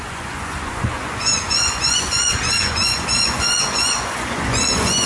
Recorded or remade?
remade